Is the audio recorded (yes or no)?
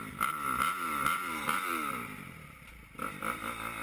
no